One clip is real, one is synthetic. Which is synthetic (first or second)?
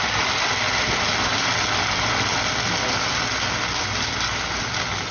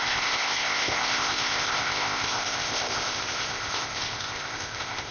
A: second